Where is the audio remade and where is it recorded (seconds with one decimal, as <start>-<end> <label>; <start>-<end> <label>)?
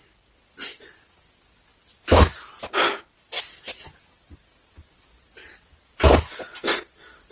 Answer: 0.0-1.7 recorded; 1.7-2.7 remade; 2.7-6.6 recorded; 6.6-7.3 remade